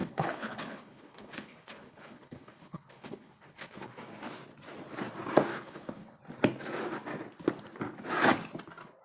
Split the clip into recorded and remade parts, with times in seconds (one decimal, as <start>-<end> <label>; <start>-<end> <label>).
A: 0.0-3.9 remade; 3.9-5.5 recorded; 5.5-6.2 remade; 6.2-9.0 recorded